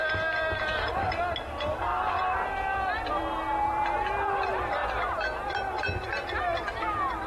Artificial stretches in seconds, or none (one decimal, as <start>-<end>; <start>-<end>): none